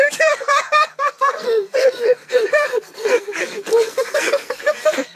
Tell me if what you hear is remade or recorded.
remade